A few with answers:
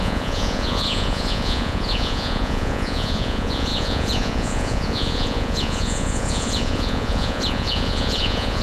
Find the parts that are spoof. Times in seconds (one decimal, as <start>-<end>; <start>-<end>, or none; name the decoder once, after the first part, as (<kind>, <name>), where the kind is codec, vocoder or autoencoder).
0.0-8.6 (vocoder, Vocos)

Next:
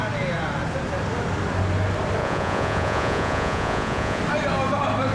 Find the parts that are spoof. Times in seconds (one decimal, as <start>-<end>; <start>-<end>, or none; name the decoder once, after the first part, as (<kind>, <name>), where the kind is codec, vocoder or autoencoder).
2.2-4.2 (vocoder, Vocos)

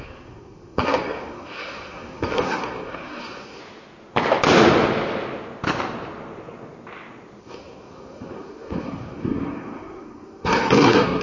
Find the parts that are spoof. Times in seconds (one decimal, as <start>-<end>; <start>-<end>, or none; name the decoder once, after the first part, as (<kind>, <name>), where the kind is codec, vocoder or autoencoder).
0.0-3.6 (codec, SNAC); 7.4-11.2